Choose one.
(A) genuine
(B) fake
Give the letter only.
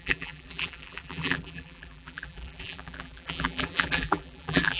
B